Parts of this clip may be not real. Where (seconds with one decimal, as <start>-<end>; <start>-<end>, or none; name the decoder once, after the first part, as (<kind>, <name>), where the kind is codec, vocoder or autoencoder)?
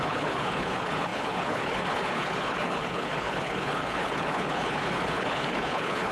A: 0.0-6.1 (codec, HILCodec)